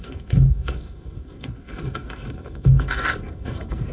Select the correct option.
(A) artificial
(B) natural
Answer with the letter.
A